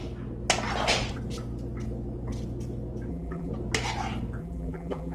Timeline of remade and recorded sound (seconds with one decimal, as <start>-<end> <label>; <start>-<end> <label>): 0.0-3.1 recorded; 3.1-3.5 remade; 3.5-4.4 recorded; 4.4-5.1 remade